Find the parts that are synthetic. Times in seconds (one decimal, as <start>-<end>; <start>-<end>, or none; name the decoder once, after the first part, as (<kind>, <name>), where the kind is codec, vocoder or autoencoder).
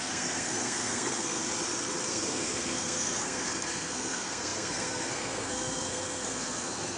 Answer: 0.0-1.4 (codec, SNAC); 2.1-7.0